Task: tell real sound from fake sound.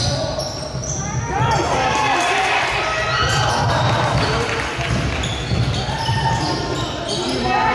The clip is real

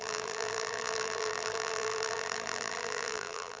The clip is fake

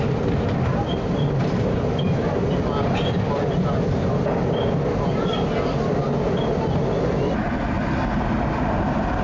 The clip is real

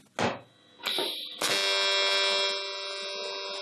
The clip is real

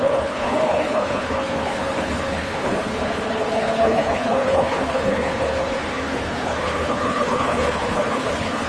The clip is fake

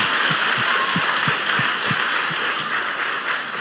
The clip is real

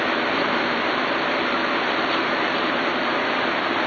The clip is fake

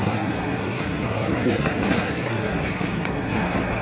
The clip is fake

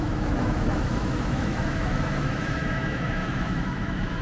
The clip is fake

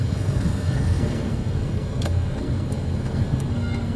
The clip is fake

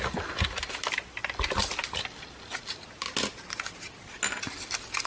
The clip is real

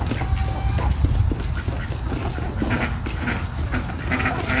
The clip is real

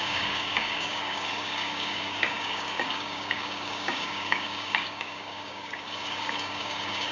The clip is fake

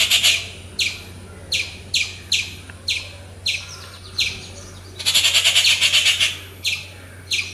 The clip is real